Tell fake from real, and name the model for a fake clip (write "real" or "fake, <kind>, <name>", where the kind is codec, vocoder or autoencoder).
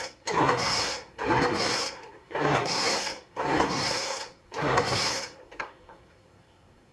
fake, codec, SNAC